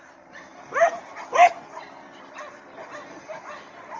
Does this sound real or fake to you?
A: fake